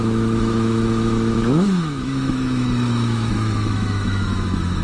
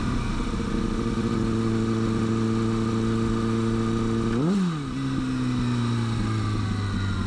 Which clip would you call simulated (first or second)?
first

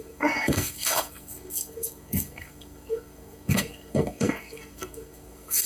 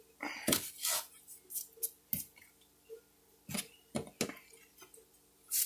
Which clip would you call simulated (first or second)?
first